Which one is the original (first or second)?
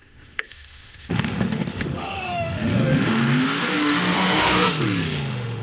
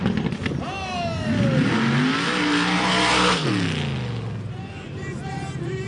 second